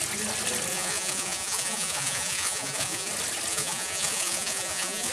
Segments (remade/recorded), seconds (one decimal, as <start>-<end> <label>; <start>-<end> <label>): 0.0-0.7 recorded; 0.7-3.1 remade; 3.1-3.5 recorded; 3.5-5.1 remade